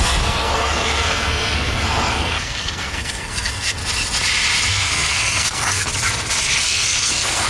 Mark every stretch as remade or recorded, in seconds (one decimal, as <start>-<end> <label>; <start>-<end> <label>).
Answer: 0.0-3.8 remade; 3.8-4.7 recorded; 4.7-5.9 remade; 5.9-6.6 recorded; 6.6-7.5 remade